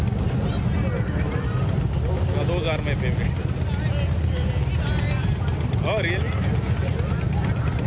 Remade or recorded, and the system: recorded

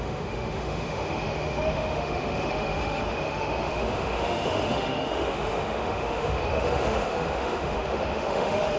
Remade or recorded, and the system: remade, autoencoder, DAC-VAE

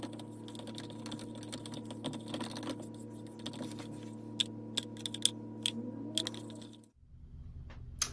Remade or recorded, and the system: recorded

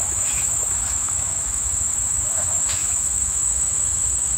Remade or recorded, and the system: remade, autoencoder, DAC-VAE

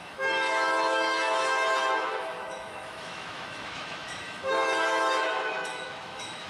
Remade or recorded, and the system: remade, autoencoder, DAC-VAE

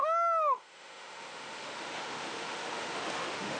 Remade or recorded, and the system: remade, autoencoder, DAC-VAE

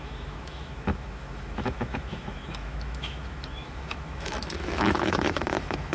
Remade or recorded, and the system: remade, autoencoder, DAC-VAE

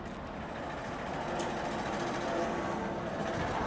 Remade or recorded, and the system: recorded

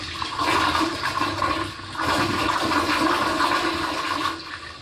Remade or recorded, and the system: recorded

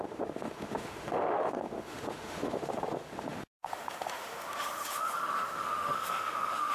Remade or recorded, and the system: remade, autoencoder, DAC-VAE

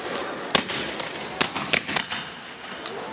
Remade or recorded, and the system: recorded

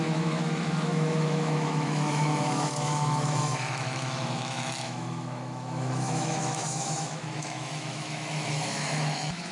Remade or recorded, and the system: remade, autoencoder, DAC-VAE